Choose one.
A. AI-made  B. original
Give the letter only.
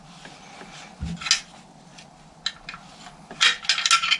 B